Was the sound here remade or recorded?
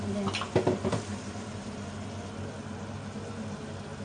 recorded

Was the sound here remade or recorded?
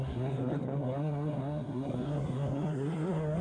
remade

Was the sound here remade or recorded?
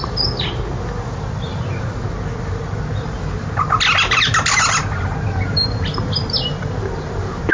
recorded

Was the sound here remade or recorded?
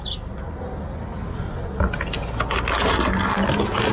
recorded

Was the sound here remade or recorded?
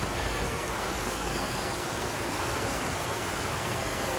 remade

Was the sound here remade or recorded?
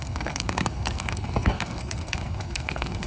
remade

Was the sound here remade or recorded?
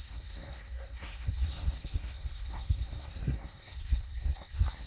remade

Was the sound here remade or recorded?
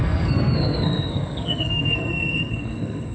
remade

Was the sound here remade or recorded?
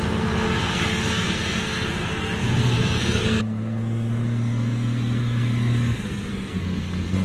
remade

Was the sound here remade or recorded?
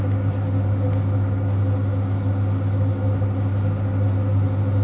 recorded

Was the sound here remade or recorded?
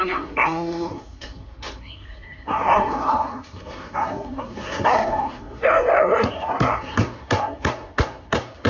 remade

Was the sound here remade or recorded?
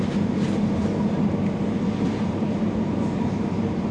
recorded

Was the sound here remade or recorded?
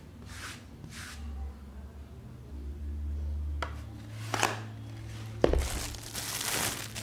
recorded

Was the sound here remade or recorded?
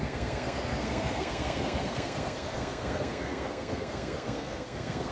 remade